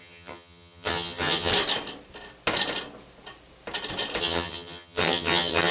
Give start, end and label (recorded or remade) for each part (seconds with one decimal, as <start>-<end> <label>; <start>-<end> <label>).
0.0-1.5 remade; 1.5-4.2 recorded; 4.2-5.7 remade